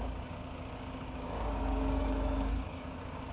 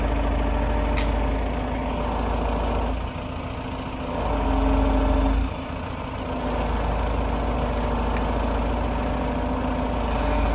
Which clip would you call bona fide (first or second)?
second